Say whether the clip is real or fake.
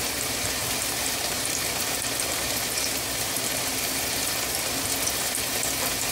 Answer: fake